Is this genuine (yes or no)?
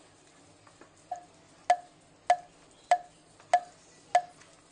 yes